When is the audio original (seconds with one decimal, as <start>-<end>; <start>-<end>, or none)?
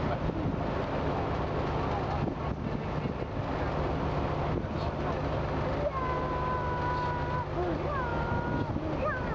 0.0-9.3